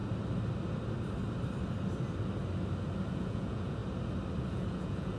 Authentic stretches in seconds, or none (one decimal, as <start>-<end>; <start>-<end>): 0.0-3.1; 3.8-4.5